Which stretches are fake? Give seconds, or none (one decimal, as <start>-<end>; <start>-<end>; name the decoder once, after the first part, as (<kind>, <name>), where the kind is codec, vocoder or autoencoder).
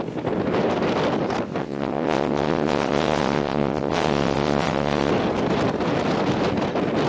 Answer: 1.6-5.1 (vocoder, WaveNeXt)